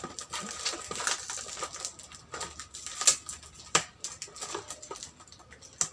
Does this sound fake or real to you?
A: real